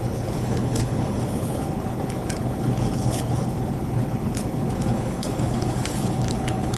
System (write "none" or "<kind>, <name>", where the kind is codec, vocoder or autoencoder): codec, HILCodec